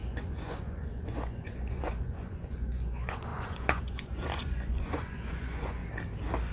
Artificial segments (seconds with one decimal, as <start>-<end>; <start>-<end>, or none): 0.0-5.8